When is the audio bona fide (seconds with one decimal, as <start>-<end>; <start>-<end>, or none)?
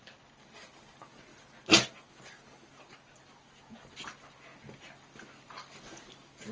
0.0-6.5